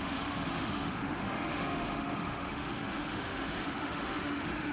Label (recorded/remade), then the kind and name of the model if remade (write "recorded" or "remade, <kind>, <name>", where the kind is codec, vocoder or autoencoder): remade, autoencoder, DAC-VAE